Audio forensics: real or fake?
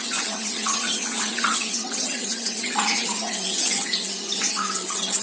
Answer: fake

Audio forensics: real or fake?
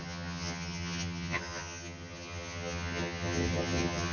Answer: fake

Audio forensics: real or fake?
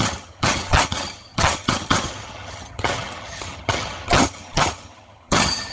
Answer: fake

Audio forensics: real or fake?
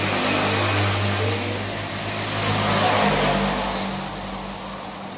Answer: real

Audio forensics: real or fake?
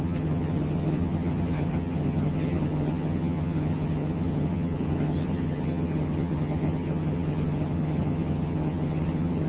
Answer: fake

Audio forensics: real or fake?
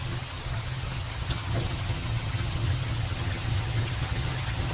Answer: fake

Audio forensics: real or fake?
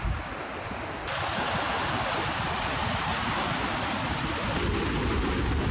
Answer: real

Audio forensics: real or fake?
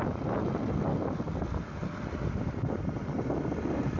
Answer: real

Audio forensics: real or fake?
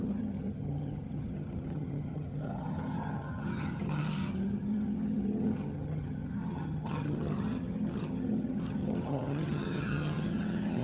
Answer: fake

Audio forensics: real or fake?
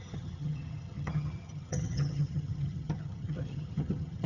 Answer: fake